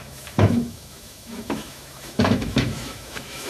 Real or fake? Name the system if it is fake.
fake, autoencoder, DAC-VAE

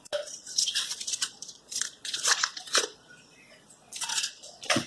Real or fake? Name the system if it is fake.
fake, vocoder, Vocos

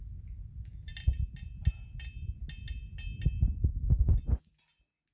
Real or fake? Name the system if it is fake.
real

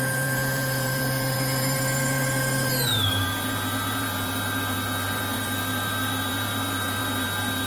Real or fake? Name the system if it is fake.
fake, vocoder, BigVGAN v2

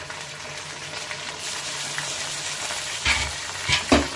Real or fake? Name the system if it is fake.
fake, vocoder, BigVGAN v2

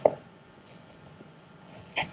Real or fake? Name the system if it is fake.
fake, vocoder, Vocos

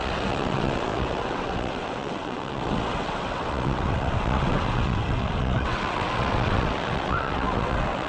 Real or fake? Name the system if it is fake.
fake, vocoder, WaveNeXt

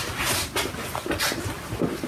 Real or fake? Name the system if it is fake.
real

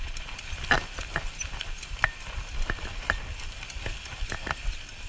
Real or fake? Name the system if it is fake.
real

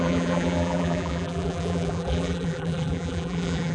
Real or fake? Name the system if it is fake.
fake, vocoder, BigVGAN v2